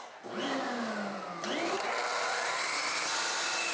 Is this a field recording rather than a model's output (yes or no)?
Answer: yes